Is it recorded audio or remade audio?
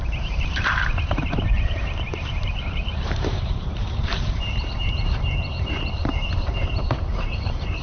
remade